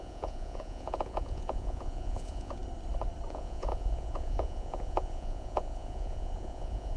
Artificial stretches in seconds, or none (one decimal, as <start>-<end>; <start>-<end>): 0.0-2.6; 3.3-7.0